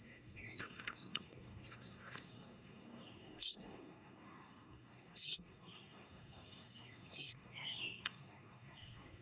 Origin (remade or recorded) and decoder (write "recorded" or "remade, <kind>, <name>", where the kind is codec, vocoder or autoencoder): remade, codec, SNAC